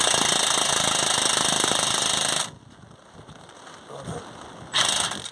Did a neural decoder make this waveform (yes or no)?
no